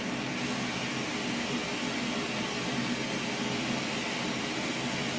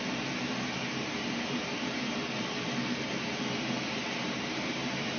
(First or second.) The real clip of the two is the first